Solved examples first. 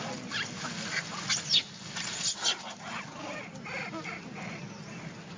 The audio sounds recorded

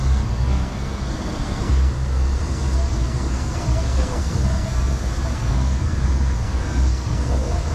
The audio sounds remade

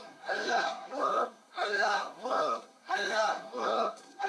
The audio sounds remade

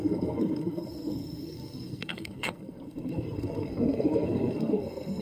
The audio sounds remade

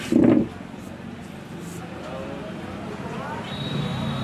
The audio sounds recorded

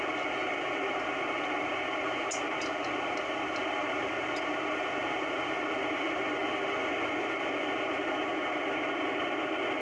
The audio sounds recorded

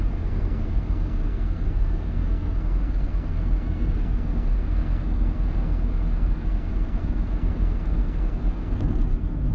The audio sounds remade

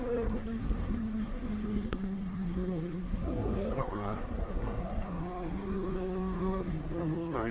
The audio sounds remade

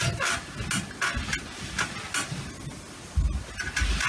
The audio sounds recorded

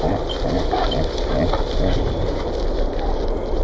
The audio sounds recorded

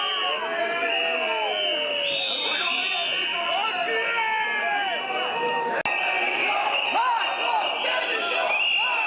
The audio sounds recorded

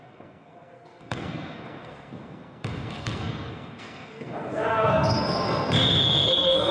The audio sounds remade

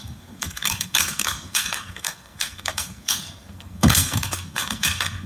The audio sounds remade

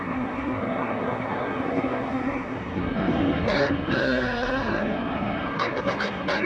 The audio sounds remade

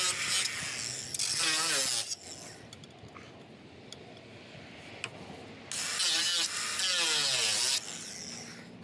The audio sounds recorded